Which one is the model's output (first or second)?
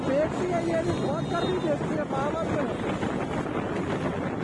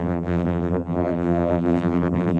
second